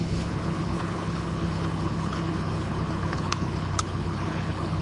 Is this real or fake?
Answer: fake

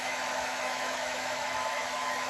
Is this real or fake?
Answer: fake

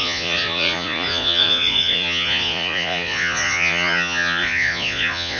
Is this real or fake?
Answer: fake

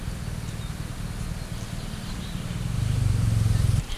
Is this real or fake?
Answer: real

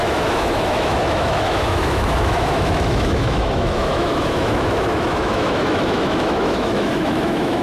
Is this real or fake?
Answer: fake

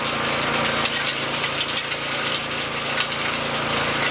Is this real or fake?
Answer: real